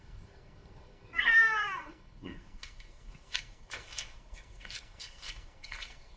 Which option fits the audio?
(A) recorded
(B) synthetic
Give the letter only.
B